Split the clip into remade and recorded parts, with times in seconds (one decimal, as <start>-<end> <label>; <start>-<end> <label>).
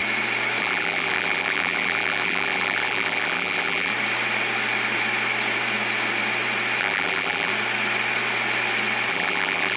0.0-0.6 recorded; 0.6-3.9 remade; 3.9-6.8 recorded; 6.8-7.5 remade; 7.5-9.1 recorded; 9.1-9.8 remade